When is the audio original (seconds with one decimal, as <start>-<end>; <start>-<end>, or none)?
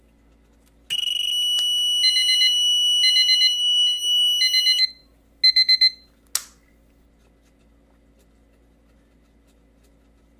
0.0-10.4